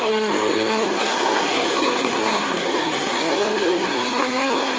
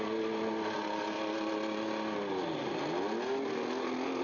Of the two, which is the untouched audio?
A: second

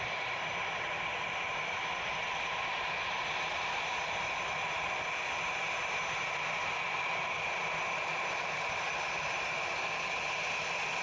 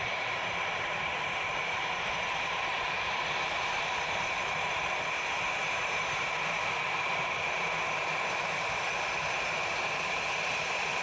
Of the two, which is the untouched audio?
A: first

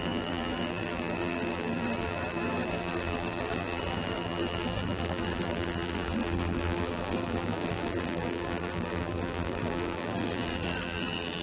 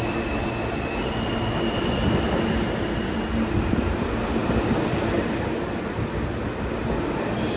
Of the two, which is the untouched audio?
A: second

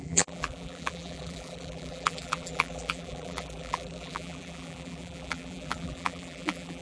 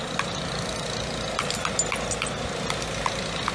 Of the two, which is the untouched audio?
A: second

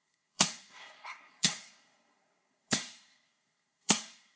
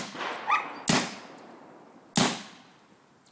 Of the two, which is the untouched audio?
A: second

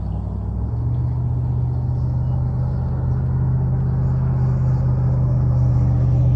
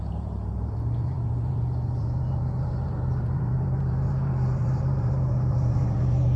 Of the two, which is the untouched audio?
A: first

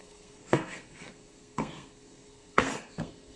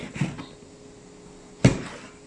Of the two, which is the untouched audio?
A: second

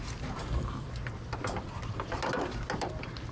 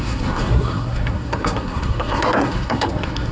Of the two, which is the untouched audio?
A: first